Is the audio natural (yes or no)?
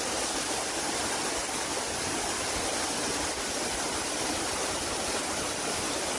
yes